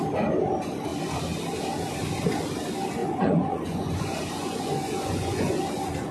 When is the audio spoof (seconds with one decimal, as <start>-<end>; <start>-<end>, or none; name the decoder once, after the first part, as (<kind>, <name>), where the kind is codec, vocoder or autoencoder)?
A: 3.0-5.6 (vocoder, Vocos)